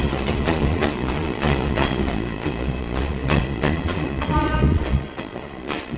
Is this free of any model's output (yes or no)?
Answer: no